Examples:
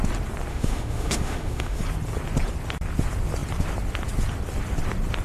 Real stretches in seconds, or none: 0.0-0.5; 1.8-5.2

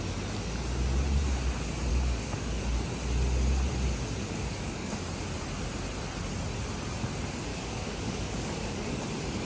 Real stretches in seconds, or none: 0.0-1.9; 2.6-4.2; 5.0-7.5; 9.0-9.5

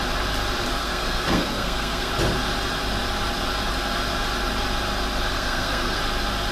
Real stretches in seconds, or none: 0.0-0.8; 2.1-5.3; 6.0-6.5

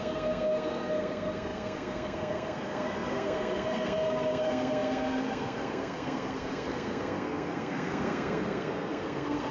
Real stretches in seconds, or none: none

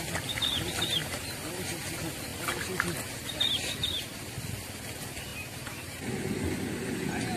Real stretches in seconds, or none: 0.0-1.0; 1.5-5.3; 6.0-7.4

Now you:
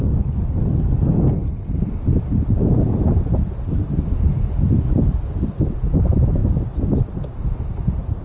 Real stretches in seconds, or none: 0.0-8.2